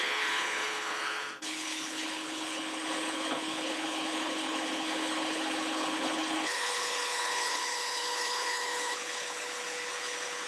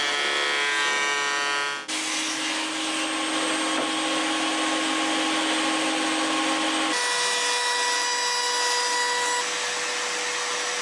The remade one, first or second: first